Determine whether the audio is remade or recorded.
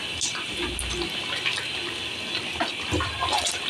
recorded